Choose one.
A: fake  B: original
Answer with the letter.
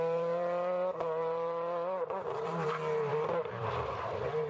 A